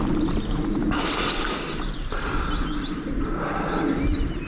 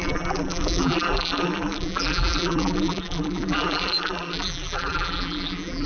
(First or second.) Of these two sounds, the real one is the first